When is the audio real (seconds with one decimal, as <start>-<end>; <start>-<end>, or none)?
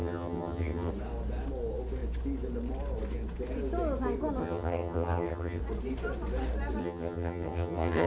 0.9-4.4; 5.6-6.8